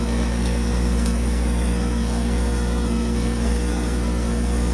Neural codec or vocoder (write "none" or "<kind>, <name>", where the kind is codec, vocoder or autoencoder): codec, SNAC